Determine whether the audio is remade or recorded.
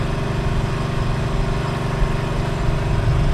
recorded